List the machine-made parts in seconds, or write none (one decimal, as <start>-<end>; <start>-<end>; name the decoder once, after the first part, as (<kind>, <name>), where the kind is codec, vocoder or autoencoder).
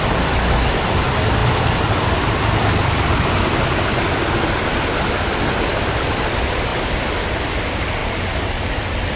0.0-1.4 (vocoder, BigVGAN v2); 2.8-8.0